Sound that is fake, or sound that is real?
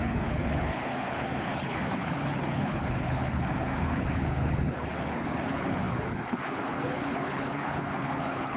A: fake